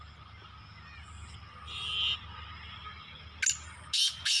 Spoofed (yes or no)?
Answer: no